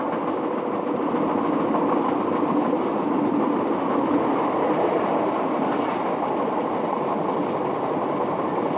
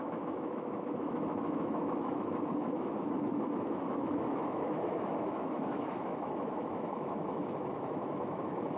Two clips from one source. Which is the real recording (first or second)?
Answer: first